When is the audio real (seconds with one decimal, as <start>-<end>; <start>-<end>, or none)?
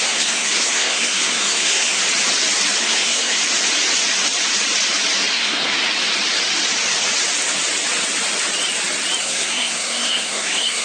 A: 2.0-2.8; 3.4-5.3; 5.8-9.2